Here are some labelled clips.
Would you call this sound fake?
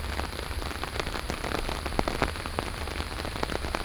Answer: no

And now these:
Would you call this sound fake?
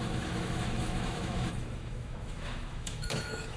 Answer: yes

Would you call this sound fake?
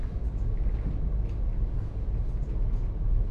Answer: no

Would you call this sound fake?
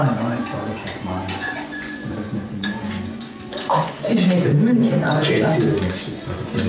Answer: yes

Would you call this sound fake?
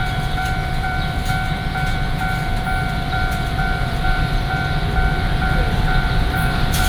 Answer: yes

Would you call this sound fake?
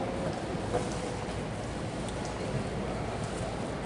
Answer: no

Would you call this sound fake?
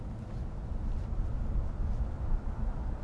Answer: no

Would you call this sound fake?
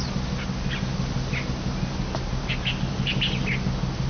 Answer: no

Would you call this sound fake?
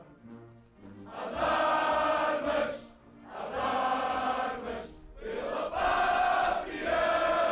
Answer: no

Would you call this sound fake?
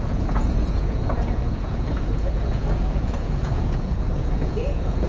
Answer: yes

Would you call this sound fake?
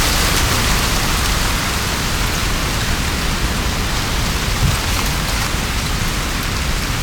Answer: no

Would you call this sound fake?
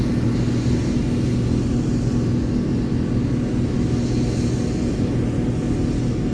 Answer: no